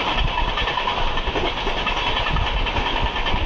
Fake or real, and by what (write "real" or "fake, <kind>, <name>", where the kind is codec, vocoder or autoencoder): real